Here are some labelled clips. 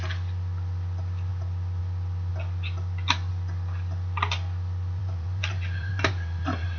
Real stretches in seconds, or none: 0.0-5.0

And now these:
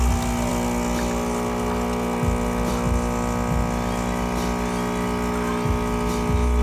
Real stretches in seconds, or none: 0.0-6.6

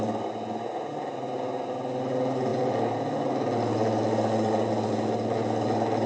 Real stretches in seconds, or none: 0.0-6.1

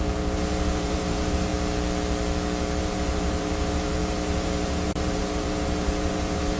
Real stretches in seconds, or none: 1.5-2.8

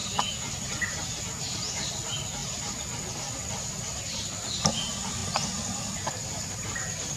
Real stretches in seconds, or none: 0.0-1.7; 2.4-4.0; 5.2-6.1

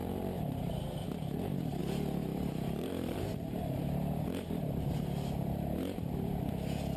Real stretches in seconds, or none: 1.8-2.2; 6.4-7.0

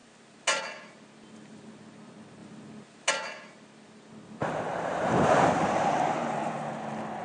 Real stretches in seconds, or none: 0.0-4.4; 6.5-7.2